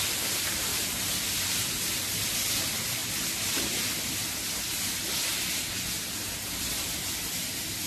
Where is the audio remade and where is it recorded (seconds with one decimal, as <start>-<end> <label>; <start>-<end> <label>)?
0.0-0.7 remade; 0.7-1.2 recorded; 1.2-3.0 remade; 3.0-6.6 recorded; 6.6-7.9 remade